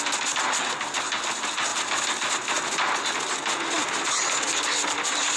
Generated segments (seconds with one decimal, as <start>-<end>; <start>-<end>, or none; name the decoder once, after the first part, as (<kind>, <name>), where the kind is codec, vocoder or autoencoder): none